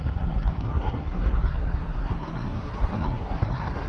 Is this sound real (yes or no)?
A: no